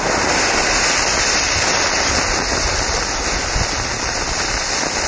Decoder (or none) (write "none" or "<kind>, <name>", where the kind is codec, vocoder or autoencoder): none